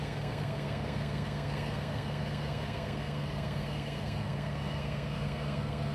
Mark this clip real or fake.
fake